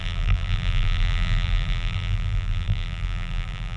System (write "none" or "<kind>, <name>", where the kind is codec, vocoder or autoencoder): vocoder, BigVGAN v2